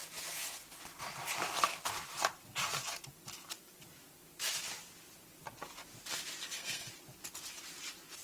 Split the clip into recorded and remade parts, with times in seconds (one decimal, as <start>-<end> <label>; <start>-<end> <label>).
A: 0.0-6.4 recorded; 6.4-6.9 remade; 6.9-8.2 recorded